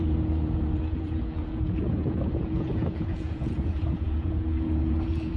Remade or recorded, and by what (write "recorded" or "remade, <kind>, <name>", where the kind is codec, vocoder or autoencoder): remade, vocoder, Vocos